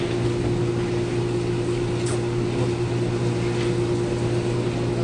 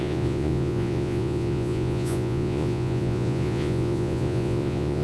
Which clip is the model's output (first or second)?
second